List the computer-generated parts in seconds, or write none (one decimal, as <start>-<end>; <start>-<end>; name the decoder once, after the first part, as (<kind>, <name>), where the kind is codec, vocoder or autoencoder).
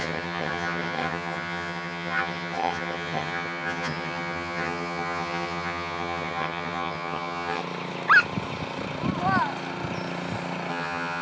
0.0-7.6 (vocoder, HiFi-GAN); 10.7-11.2